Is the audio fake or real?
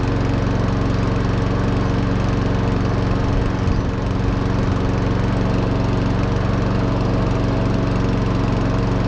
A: real